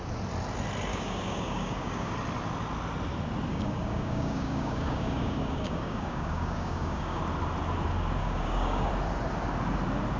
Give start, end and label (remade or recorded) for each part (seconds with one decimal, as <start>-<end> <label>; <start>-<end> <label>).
0.0-0.9 recorded; 0.9-2.1 remade; 2.1-3.5 recorded; 3.5-7.2 remade; 7.2-8.2 recorded; 8.2-8.9 remade; 8.9-10.2 recorded